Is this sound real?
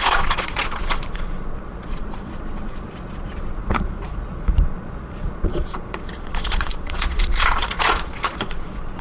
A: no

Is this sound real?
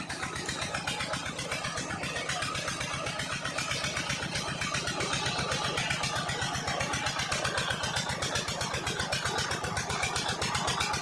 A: yes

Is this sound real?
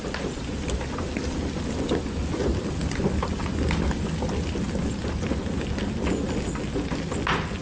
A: yes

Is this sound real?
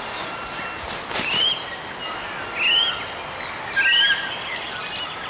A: yes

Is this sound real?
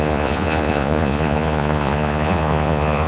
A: no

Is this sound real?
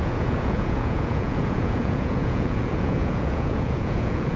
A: no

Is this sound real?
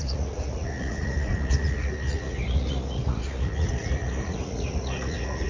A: no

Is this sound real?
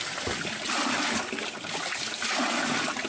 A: yes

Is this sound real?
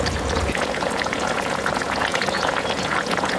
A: no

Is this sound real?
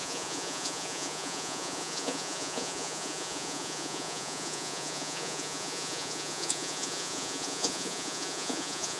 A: no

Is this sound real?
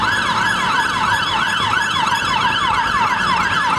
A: yes